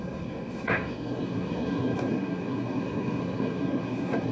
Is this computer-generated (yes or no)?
yes